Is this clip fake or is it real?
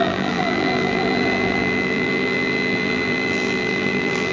fake